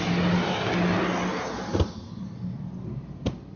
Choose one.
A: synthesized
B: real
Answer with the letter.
B